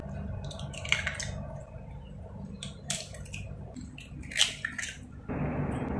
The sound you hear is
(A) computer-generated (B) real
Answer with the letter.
B